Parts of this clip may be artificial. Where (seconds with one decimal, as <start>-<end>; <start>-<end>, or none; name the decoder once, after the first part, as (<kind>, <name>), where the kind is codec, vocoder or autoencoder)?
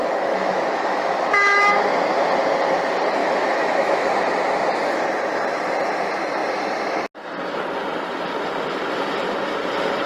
0.0-1.7 (autoencoder, DAC-VAE); 3.2-4.1